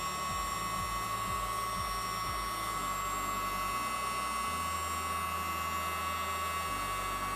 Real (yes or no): yes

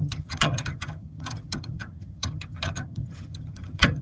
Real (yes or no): no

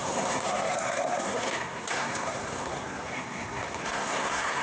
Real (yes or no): no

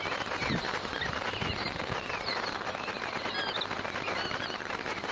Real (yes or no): no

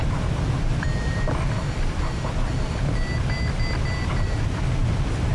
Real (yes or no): yes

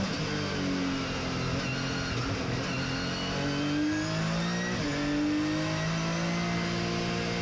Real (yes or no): yes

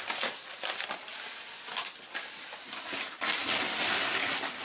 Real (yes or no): yes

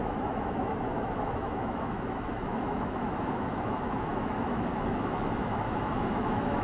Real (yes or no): no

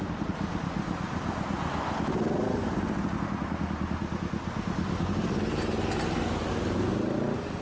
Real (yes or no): yes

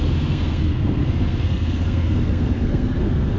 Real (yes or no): no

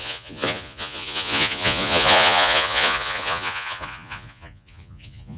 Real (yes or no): no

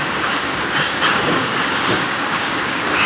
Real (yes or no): no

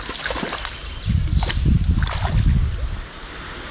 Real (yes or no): yes